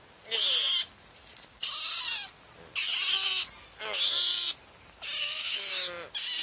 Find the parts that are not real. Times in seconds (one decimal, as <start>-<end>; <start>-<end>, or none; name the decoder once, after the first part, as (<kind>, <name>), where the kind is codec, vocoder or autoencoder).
5.2-5.7 (codec, SNAC)